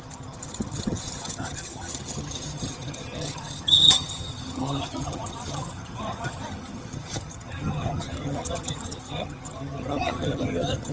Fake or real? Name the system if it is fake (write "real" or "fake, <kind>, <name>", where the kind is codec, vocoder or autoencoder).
fake, vocoder, HiFi-GAN